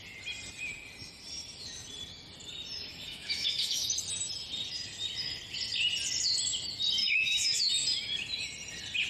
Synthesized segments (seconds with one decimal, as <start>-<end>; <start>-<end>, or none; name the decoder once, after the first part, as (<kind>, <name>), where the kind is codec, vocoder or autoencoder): 2.9-3.9 (autoencoder, DAC-VAE); 7.0-7.7